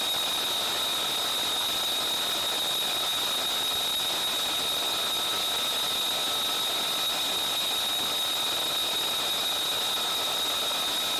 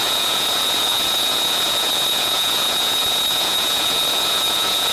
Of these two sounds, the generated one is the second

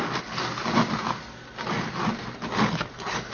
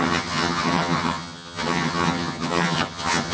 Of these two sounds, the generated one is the second